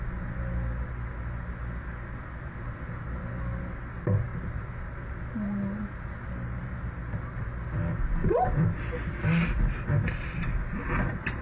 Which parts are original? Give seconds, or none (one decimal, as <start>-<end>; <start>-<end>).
0.0-4.3; 5.1-8.2; 8.9-11.4

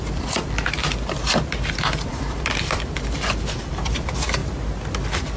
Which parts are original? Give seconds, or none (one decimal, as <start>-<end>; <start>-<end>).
4.4-5.4